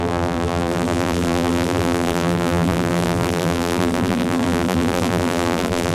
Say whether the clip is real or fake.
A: fake